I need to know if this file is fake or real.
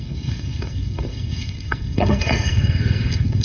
fake